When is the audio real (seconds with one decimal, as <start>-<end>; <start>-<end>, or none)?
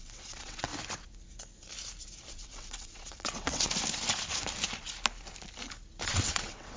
0.7-2.3; 3.7-6.1